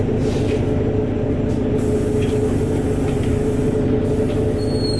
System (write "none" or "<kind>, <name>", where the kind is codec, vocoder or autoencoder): none